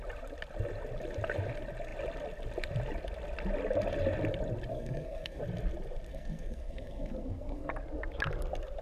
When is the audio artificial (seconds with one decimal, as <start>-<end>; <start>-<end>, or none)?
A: 4.7-5.4; 6.1-7.7